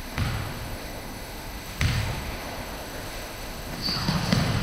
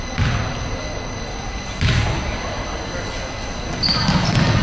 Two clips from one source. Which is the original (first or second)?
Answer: second